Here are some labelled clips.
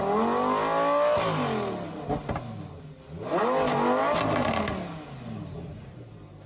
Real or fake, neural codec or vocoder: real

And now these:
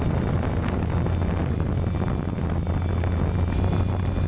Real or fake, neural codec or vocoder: real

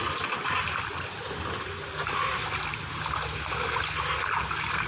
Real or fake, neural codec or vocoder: real